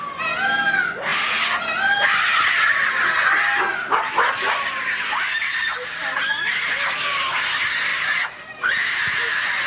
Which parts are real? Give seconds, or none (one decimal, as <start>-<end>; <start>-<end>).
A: 0.0-5.7; 6.7-7.9; 8.7-9.7